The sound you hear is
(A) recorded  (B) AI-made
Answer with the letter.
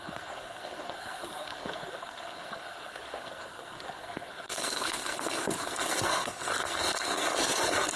B